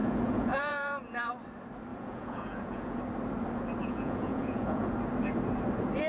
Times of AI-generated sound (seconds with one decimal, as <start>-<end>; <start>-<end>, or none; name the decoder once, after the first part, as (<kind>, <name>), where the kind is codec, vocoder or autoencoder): 0.0-1.3 (vocoder, Vocos); 1.9-3.0; 3.8-4.9